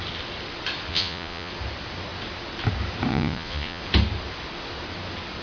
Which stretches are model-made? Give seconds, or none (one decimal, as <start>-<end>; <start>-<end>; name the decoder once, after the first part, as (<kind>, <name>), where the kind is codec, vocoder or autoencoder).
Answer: 0.9-1.5 (vocoder, Vocos); 3.1-3.8